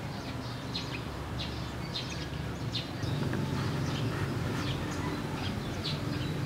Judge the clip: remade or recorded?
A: remade